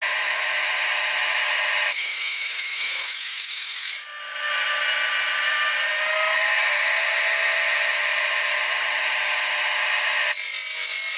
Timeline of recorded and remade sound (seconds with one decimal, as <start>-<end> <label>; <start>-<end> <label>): 0.0-1.9 recorded; 1.9-3.9 remade; 3.9-11.2 recorded